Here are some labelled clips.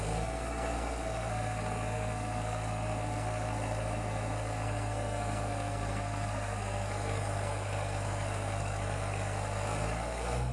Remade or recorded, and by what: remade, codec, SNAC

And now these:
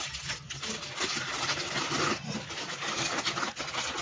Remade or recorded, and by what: recorded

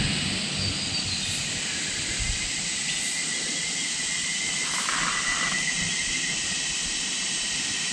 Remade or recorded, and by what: recorded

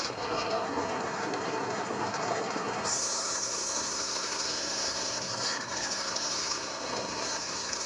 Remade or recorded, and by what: remade, codec, SNAC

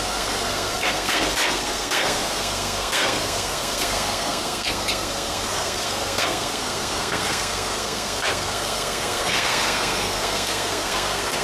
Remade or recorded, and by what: remade, codec, SNAC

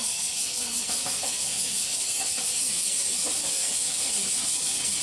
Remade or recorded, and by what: remade, codec, SNAC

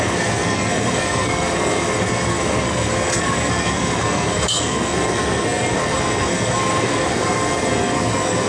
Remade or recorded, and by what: remade, codec, SNAC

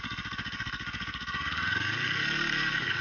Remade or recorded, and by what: remade, codec, SNAC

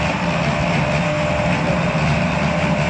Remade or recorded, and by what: recorded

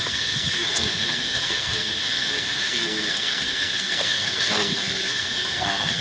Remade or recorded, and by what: remade, codec, SNAC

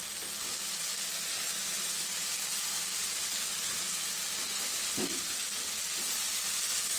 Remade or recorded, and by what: recorded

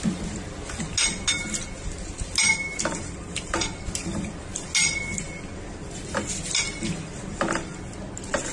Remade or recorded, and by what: recorded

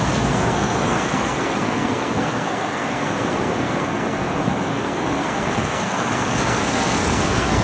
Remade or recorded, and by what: remade, codec, SNAC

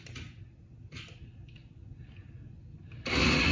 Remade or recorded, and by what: recorded